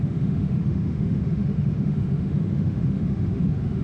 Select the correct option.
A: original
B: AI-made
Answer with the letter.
B